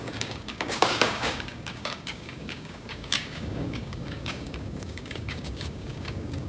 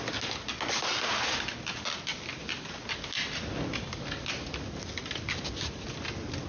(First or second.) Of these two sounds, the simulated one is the first